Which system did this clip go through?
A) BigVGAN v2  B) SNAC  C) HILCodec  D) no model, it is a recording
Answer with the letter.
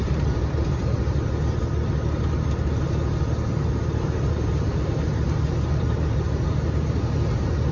D